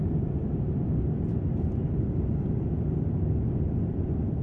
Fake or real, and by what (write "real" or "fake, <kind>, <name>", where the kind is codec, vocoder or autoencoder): real